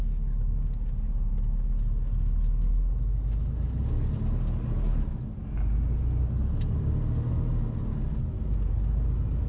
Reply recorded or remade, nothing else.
recorded